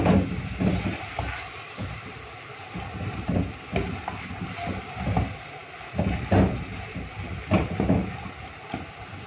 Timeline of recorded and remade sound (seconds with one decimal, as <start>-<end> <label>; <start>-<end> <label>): 0.0-9.3 recorded